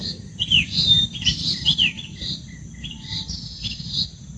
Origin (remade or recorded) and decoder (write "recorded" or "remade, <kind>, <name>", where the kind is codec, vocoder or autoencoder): recorded